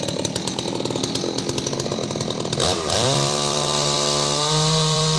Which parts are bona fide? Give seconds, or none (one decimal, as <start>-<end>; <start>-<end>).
0.0-1.9